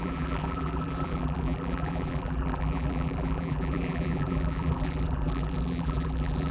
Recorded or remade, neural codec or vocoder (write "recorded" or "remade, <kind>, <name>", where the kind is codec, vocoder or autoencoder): remade, vocoder, BigVGAN v2